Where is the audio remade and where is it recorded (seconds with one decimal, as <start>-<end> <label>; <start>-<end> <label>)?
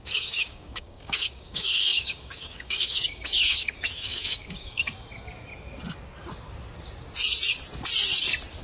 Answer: 0.0-4.9 remade; 4.9-8.6 recorded